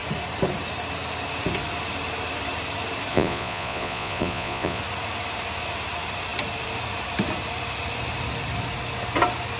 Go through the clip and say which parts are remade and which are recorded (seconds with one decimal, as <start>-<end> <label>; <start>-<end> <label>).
0.0-3.1 recorded; 3.1-4.8 remade; 4.8-9.6 recorded